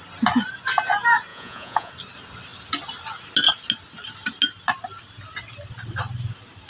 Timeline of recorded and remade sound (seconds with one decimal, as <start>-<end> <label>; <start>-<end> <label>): 0.0-1.3 recorded; 1.3-1.9 remade; 1.9-6.7 recorded

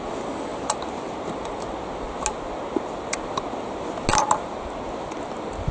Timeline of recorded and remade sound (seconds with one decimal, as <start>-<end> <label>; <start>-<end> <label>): 0.0-5.7 recorded

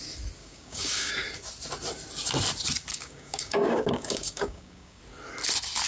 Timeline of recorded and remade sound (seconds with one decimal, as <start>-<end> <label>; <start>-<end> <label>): 0.0-0.4 recorded; 0.4-1.1 remade; 1.1-2.9 recorded; 2.9-5.0 remade; 5.0-5.9 recorded

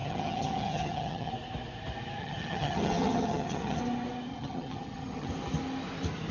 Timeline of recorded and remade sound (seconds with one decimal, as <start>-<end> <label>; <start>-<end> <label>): 0.0-1.3 remade; 1.3-2.2 recorded; 2.2-3.8 remade; 3.8-4.3 recorded; 4.3-5.3 remade; 5.3-6.3 recorded

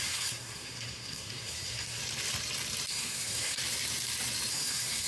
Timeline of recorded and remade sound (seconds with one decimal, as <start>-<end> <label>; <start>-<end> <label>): 0.0-2.0 remade; 2.0-2.9 recorded; 2.9-3.6 remade; 3.6-4.5 recorded; 4.5-5.1 remade

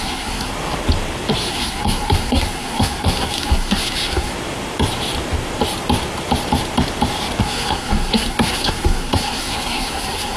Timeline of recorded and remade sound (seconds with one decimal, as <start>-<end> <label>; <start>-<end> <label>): 0.0-0.5 remade; 0.5-1.5 recorded; 1.5-4.3 remade; 4.3-7.4 recorded; 7.4-10.4 remade